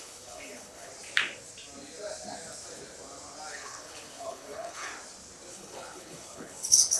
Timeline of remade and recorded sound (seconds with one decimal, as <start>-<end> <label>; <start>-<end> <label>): 0.0-0.9 remade; 0.9-3.5 recorded; 3.5-4.9 remade; 4.9-5.5 recorded; 5.5-7.0 remade